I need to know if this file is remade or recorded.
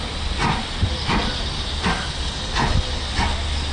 recorded